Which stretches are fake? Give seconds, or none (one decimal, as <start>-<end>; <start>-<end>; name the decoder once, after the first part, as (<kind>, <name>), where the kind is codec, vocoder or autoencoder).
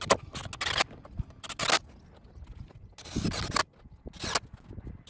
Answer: none